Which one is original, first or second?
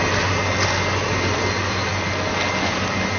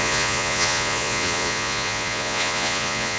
first